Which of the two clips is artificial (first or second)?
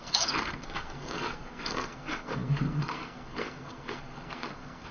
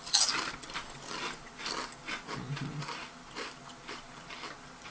first